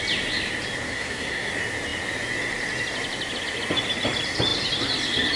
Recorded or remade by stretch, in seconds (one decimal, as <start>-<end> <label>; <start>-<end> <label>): 0.0-0.9 recorded; 0.9-1.5 remade; 1.5-5.4 recorded